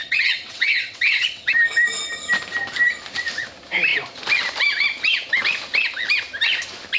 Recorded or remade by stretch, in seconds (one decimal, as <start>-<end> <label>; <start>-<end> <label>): 0.0-1.5 remade; 1.5-7.0 recorded